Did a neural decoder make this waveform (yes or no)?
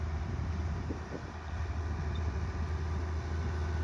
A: no